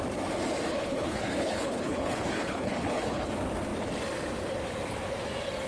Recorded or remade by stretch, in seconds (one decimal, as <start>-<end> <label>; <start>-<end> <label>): 0.0-0.7 recorded; 0.7-3.3 remade; 3.3-5.7 recorded